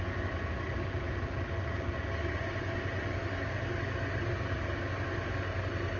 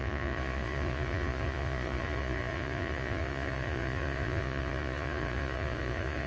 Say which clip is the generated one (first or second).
second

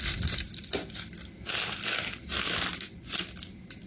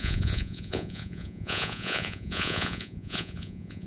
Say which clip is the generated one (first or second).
second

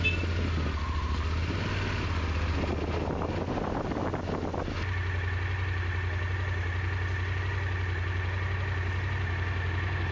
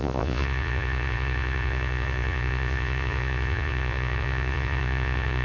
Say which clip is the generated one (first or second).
second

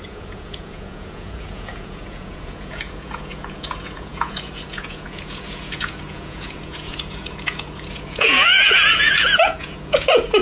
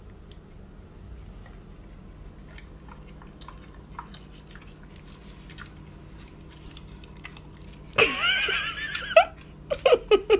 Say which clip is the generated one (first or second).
first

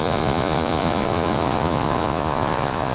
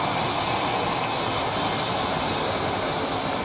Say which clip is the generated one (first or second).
first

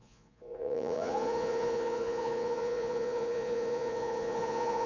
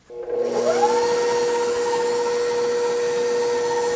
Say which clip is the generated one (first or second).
first